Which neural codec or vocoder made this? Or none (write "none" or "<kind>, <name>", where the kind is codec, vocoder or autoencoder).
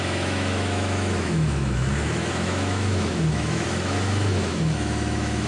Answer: autoencoder, DAC-VAE